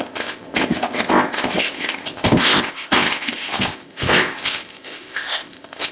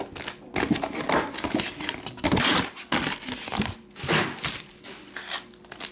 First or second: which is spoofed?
first